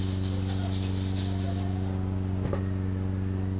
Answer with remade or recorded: recorded